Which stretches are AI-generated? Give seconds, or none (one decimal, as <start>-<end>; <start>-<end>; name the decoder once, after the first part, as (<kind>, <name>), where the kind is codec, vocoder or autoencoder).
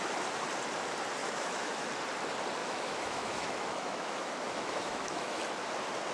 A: 1.2-1.9 (autoencoder, DAC-VAE); 2.6-5.4